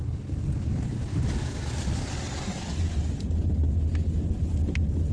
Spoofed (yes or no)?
no